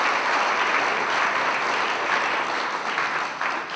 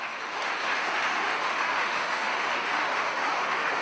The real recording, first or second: first